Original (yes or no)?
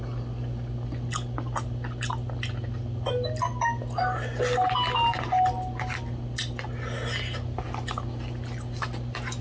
yes